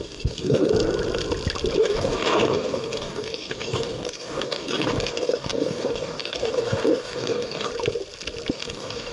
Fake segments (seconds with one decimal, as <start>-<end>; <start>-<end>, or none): 0.0-0.7; 1.8-7.7; 8.5-9.1

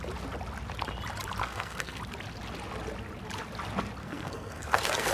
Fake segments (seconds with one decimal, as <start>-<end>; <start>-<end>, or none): 1.4-2.0; 4.0-5.1

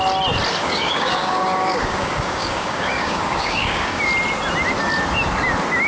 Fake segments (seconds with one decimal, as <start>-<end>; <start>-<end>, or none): 0.6-4.1

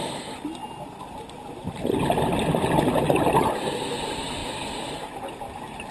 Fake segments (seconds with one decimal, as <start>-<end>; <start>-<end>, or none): none

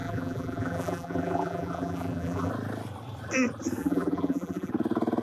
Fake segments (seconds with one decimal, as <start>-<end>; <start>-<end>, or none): 0.0-2.5; 3.8-4.7

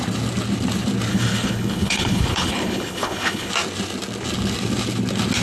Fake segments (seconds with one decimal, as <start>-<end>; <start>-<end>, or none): 1.1-3.5